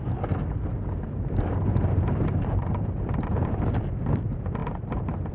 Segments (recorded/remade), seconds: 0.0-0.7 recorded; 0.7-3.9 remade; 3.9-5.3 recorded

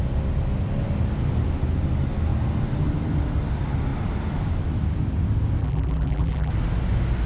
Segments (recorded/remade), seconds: 0.0-5.6 recorded; 5.6-6.5 remade; 6.5-7.3 recorded

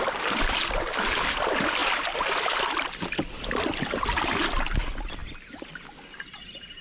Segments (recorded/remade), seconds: 0.0-1.8 recorded; 1.8-3.5 remade; 3.5-6.8 recorded

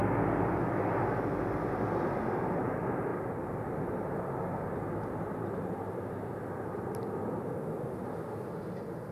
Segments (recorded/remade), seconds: 0.0-3.1 recorded; 3.1-4.6 remade; 4.6-9.1 recorded